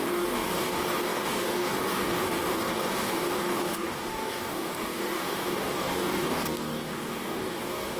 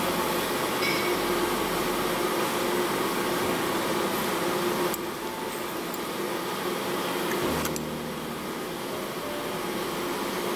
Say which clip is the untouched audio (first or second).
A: second